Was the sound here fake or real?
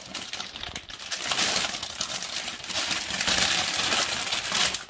real